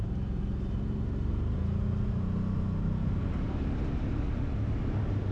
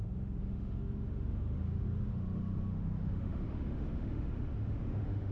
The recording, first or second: first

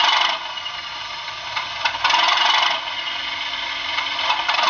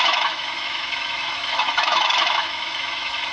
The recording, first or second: first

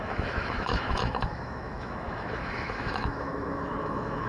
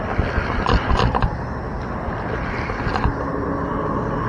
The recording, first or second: second